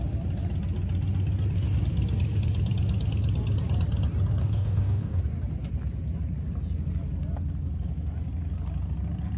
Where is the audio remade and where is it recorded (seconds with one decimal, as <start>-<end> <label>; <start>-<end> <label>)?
0.0-4.4 recorded; 4.4-5.2 remade; 5.2-9.4 recorded